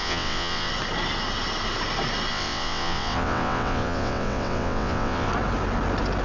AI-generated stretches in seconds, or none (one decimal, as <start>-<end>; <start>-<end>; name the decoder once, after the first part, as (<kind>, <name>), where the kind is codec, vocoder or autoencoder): 0.0-0.7 (vocoder, WaveNeXt); 2.3-5.3

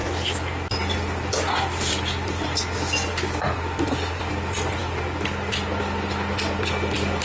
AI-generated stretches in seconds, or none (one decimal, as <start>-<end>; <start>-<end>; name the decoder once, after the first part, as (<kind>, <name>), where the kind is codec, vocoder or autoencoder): none

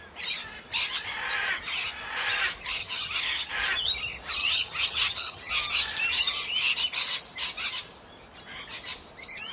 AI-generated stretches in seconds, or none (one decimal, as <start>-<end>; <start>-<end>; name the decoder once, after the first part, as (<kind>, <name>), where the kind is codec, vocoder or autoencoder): 2.8-3.5 (vocoder, HiFi-GAN); 4.4-5.5

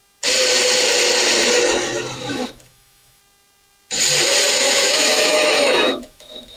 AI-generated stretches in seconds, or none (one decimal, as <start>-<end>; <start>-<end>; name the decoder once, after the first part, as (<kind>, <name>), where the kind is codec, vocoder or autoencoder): 2.3-3.2 (autoencoder, DAC-VAE); 4.5-6.6

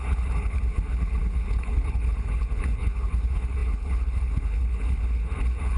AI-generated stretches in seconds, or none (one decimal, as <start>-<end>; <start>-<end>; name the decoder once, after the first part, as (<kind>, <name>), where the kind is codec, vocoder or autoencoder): 0.0-5.8 (codec, HILCodec)

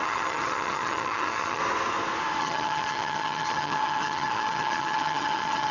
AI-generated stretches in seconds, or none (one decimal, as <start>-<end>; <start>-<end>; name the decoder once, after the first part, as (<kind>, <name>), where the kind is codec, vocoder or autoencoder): 0.0-1.6 (vocoder, HiFi-GAN); 2.4-5.7